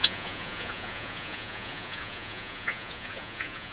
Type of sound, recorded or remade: remade